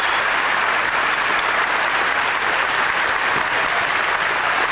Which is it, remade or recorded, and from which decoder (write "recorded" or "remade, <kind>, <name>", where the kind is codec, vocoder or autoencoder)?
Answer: recorded